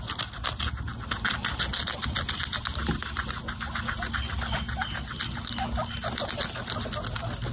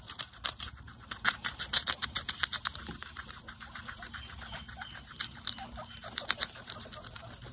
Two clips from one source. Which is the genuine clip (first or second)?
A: first